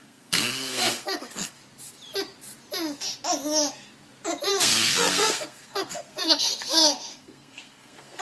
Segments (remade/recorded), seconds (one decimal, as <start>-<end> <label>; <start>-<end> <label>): 0.0-1.6 remade; 1.6-4.5 recorded; 4.5-8.2 remade

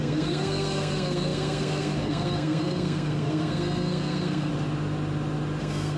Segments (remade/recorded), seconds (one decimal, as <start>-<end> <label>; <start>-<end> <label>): 0.0-4.5 remade; 4.5-5.6 recorded; 5.6-6.0 remade

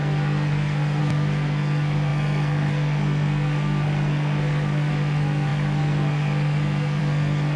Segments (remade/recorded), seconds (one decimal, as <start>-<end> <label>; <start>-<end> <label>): 0.0-7.6 remade

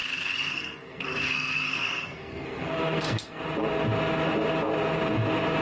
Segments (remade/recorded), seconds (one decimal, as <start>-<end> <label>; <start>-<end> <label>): 0.0-3.4 remade; 3.4-5.6 recorded